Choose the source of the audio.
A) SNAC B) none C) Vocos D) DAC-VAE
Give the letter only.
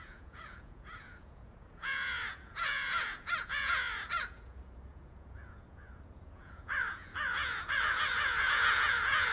C